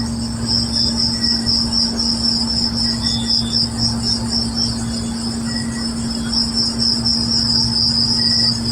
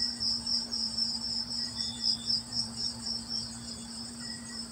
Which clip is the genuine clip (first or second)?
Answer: first